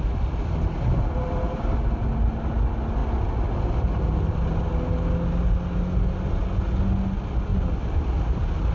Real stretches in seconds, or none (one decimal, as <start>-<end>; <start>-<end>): 0.0-8.7